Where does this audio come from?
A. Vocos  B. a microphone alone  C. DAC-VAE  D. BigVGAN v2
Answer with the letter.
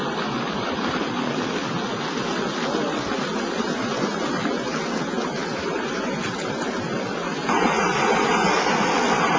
B